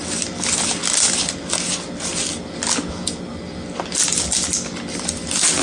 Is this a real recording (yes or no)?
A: yes